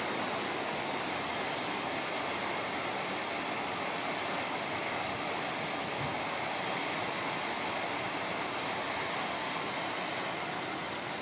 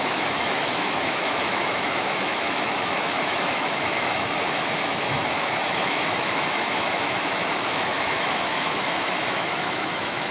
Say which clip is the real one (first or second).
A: first